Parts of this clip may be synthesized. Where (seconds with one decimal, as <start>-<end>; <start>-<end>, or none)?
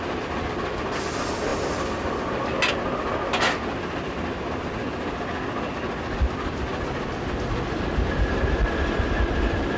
none